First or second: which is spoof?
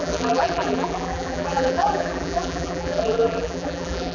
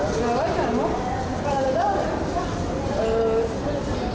first